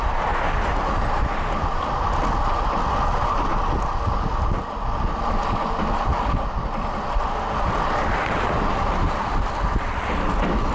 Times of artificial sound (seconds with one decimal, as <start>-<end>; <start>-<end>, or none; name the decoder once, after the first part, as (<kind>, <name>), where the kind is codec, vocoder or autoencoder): none